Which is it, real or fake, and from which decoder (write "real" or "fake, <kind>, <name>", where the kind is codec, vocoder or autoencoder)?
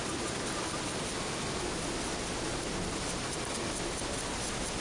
real